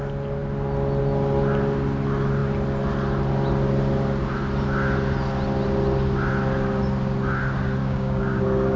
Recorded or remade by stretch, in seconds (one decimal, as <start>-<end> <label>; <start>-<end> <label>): 0.0-7.8 recorded; 7.8-8.4 remade; 8.4-8.8 recorded